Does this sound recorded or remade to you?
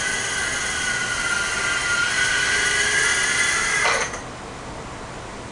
recorded